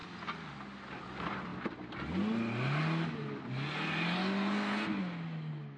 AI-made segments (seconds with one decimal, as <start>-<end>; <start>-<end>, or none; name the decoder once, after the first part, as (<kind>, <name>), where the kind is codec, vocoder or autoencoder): none